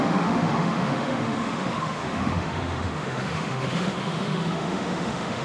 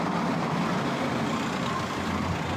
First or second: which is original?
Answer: second